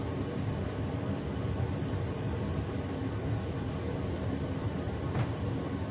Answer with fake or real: fake